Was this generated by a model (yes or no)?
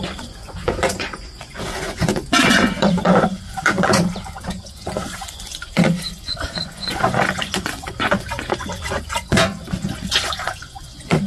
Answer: yes